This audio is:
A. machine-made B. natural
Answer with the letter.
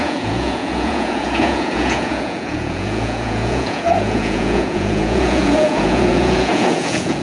A